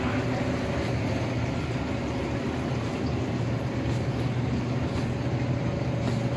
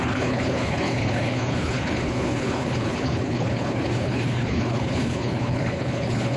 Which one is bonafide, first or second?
first